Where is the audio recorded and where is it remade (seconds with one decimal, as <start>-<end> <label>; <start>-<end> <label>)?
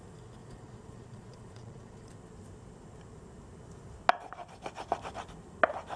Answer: 0.0-0.4 recorded; 0.4-2.1 remade; 2.1-6.0 recorded